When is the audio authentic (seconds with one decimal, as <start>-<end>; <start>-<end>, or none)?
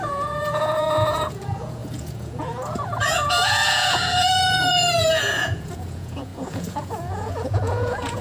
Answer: none